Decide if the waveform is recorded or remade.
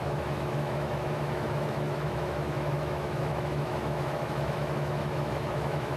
remade